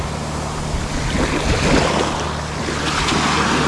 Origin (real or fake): real